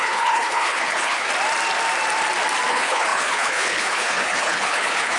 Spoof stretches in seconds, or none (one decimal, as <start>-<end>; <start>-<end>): 0.0-1.3; 2.7-5.2